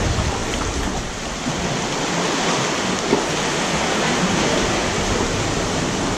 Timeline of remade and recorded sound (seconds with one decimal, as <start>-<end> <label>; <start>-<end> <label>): 0.0-4.8 recorded; 4.8-5.6 remade; 5.6-6.2 recorded